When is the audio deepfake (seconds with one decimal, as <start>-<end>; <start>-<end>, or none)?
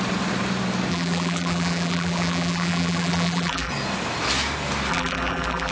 0.9-3.7; 4.9-5.7